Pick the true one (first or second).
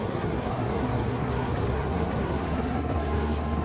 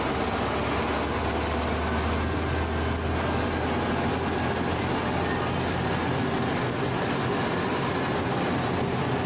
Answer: second